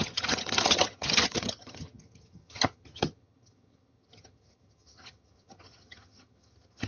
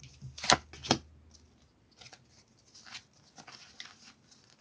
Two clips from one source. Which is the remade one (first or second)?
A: first